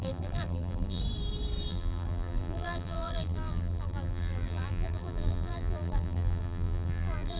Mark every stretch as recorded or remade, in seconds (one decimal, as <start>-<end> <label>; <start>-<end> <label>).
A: 0.0-1.0 remade; 1.0-1.7 recorded; 1.7-7.4 remade